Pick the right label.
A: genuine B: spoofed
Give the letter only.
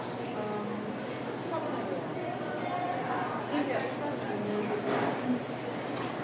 A